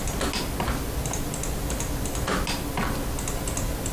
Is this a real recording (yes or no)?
yes